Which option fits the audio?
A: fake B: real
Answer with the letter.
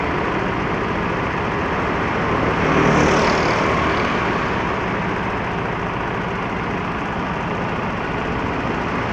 B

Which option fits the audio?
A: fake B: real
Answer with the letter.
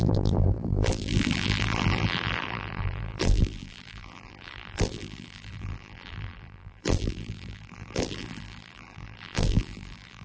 A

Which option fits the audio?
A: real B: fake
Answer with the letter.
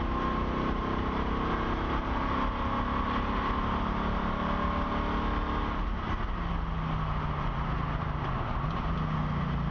A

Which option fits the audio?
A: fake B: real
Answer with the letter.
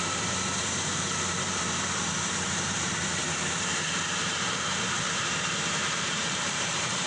A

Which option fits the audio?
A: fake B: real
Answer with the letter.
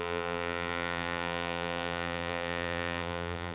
A